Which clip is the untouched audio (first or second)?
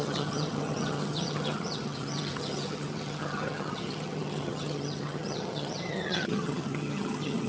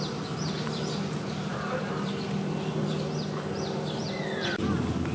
second